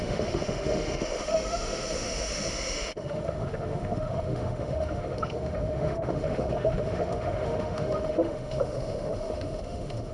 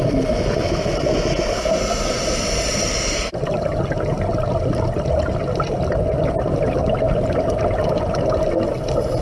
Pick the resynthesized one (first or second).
first